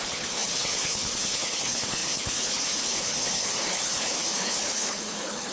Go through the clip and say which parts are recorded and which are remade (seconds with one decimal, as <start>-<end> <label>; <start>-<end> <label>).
0.0-5.5 remade